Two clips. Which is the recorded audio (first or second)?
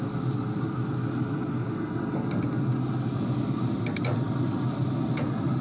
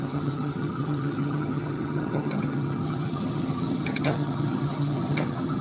first